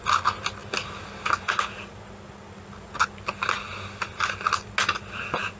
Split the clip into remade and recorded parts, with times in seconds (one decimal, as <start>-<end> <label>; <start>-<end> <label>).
0.0-5.6 recorded